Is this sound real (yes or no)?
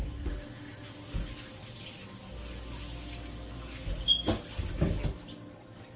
yes